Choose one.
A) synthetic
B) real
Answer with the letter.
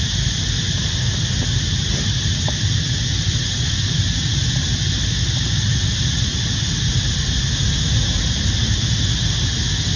B